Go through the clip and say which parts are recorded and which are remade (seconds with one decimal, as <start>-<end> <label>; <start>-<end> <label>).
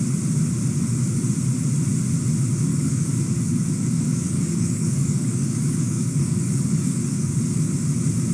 0.0-2.7 recorded; 2.7-7.4 remade; 7.4-8.3 recorded